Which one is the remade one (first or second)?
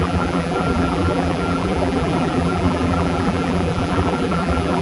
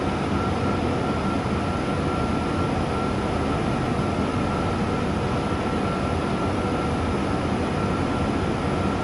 first